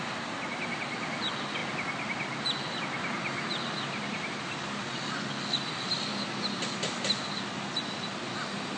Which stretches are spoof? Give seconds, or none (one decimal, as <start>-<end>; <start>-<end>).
none

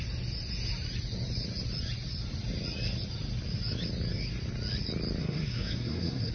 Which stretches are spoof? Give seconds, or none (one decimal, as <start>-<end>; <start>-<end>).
5.2-6.3